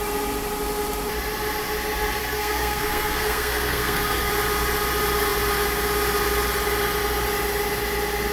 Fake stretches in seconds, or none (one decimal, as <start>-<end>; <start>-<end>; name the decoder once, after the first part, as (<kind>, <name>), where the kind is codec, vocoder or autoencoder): 2.2-4.3 (codec, SNAC)